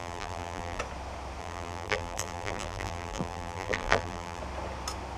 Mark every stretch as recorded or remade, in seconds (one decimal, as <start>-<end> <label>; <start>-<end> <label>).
0.0-0.8 remade; 0.8-1.4 recorded; 1.4-4.4 remade; 4.4-5.2 recorded